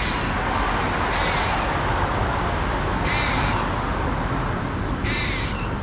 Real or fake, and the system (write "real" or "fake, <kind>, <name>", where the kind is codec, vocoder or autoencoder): real